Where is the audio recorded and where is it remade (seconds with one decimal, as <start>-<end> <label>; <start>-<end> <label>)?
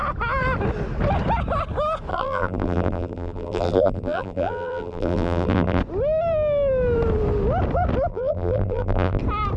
0.0-2.1 recorded; 2.1-5.8 remade; 5.8-8.1 recorded; 8.1-9.2 remade; 9.2-9.6 recorded